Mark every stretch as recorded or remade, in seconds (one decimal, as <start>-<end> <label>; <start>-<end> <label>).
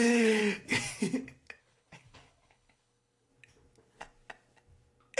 0.0-0.4 remade; 0.4-1.6 recorded; 1.6-3.3 remade; 3.3-5.2 recorded